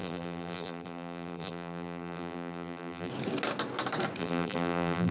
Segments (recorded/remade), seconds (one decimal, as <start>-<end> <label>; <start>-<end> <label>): 0.0-3.1 remade; 3.1-4.2 recorded; 4.2-5.1 remade